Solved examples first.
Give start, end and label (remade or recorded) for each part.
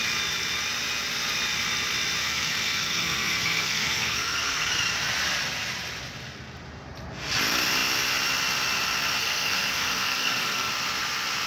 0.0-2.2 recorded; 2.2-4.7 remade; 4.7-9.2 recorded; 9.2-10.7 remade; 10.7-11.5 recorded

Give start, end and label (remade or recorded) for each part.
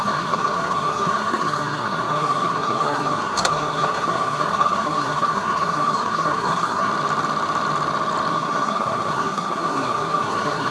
0.0-6.9 remade; 6.9-8.3 recorded; 8.3-10.7 remade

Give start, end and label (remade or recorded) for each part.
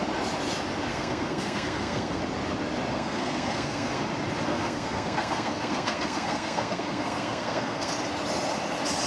0.0-0.9 recorded; 0.9-2.2 remade; 2.2-2.9 recorded; 2.9-4.0 remade; 4.0-4.5 recorded; 4.5-7.9 remade; 7.9-9.1 recorded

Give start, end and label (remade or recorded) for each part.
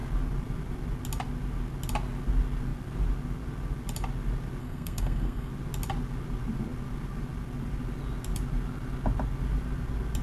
0.0-4.6 recorded; 4.6-5.5 remade; 5.5-10.2 recorded